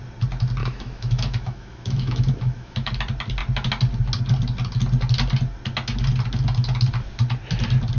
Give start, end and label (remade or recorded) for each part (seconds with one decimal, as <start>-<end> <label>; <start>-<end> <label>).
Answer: 0.0-0.6 recorded; 0.6-2.9 remade; 2.9-8.0 recorded